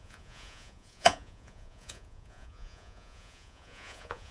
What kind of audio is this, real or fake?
fake